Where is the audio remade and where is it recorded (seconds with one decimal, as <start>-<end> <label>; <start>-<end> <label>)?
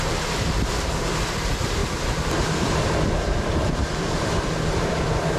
0.0-1.8 recorded; 1.8-5.0 remade; 5.0-5.4 recorded